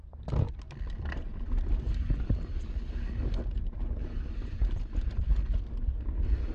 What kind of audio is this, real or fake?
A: real